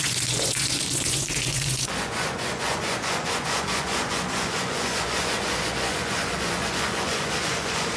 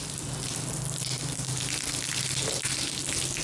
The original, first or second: second